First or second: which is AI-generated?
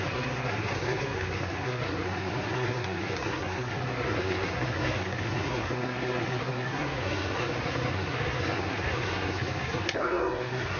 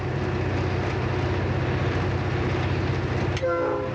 first